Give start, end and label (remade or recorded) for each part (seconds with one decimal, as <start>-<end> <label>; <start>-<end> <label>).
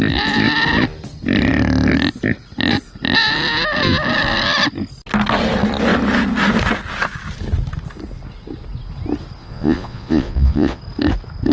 0.0-9.4 recorded; 9.4-10.8 remade; 10.8-11.5 recorded